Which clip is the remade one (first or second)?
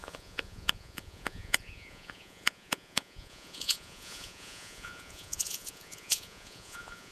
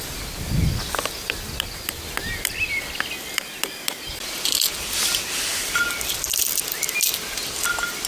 first